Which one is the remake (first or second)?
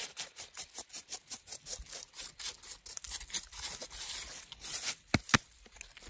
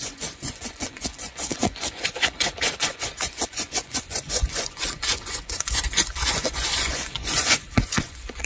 second